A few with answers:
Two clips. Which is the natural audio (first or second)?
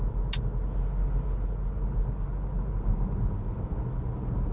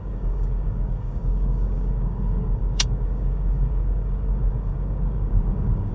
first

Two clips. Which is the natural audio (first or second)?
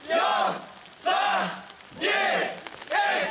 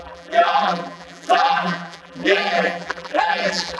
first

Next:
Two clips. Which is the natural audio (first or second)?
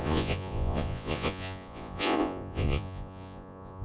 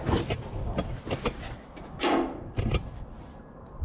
second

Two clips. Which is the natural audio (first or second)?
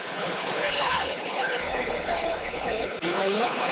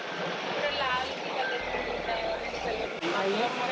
second